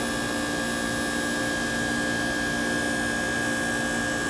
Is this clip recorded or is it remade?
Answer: recorded